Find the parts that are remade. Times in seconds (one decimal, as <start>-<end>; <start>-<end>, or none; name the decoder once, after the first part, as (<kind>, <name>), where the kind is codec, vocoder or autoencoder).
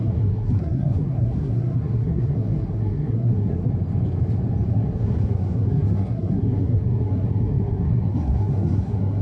0.0-3.7 (codec, SNAC); 4.7-9.2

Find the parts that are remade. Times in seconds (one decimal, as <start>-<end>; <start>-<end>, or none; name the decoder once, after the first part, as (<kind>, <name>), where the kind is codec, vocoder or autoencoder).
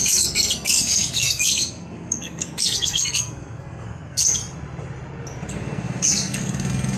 0.0-4.4 (codec, SNAC); 5.5-7.0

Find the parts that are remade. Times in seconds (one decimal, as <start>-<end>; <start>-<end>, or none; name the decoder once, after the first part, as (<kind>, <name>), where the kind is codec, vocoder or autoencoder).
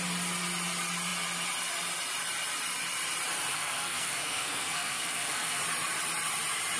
3.5-5.6 (codec, SNAC)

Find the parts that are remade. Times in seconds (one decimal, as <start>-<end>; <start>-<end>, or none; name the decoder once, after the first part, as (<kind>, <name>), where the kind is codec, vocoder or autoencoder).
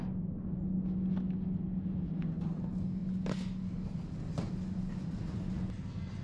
none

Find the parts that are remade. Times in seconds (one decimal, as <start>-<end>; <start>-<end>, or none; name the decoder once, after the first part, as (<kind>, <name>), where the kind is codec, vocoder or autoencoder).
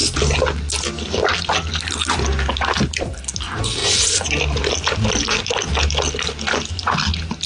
none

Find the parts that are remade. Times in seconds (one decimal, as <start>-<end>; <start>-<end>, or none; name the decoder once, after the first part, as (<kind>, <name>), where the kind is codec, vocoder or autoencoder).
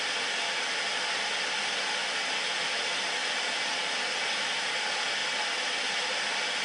none